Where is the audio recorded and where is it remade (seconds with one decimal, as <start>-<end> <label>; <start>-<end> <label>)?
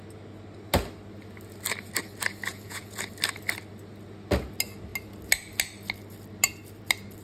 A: 0.0-2.5 recorded; 2.5-3.1 remade; 3.1-7.2 recorded